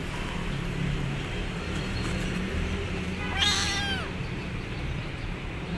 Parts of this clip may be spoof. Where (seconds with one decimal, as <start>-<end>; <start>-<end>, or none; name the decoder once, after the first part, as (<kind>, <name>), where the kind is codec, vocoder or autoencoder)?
0.7-3.1 (vocoder, BigVGAN v2); 4.7-5.8